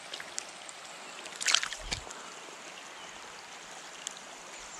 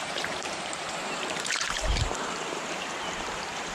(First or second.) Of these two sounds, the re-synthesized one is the second